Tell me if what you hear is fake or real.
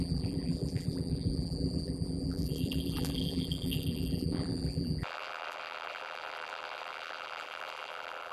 fake